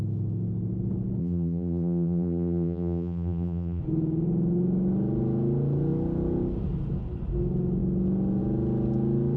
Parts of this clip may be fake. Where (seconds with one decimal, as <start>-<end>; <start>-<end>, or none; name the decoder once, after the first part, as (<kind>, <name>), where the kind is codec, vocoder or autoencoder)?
1.2-3.8 (vocoder, BigVGAN v2)